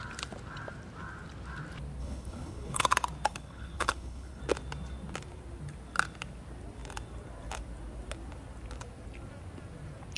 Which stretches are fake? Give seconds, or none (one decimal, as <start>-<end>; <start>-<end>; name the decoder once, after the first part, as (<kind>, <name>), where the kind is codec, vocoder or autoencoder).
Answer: 2.0-2.8 (codec, HILCodec); 3.3-4.4